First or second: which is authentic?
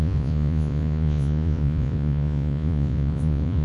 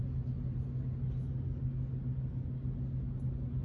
second